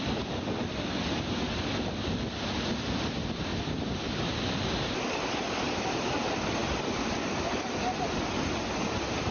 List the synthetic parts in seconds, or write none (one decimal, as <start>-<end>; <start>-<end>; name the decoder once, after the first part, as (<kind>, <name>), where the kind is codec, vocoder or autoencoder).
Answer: none